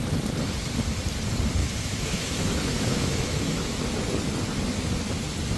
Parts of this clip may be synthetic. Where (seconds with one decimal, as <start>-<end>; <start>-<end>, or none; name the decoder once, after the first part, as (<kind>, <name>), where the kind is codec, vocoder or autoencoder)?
1.6-3.8 (autoencoder, DAC-VAE)